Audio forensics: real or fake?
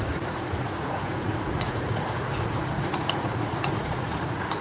fake